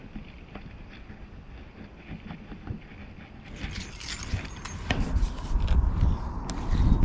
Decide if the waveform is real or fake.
real